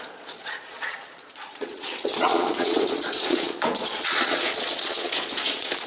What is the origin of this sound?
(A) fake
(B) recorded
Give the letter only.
A